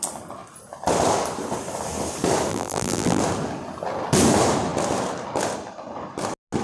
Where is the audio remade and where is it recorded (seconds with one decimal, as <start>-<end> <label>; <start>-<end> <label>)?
0.0-2.5 recorded; 2.5-3.2 remade; 3.2-6.6 recorded